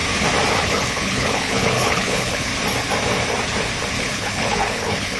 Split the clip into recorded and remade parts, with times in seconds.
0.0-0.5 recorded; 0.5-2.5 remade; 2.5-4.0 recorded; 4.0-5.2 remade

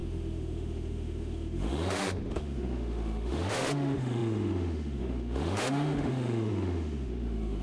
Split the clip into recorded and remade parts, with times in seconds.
0.0-7.6 remade

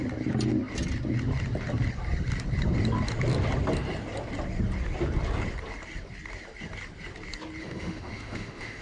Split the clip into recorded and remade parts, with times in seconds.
0.0-7.6 recorded; 7.6-8.8 remade

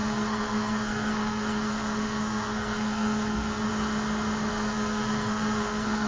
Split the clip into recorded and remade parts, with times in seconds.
0.0-3.7 remade; 3.7-4.5 recorded; 4.5-6.1 remade